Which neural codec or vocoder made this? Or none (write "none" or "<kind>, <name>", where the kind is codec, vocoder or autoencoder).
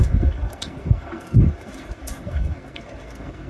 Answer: codec, SNAC